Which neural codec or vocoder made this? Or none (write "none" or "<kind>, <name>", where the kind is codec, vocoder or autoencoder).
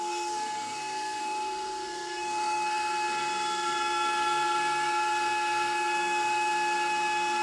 codec, SNAC